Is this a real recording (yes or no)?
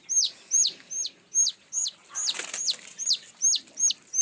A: yes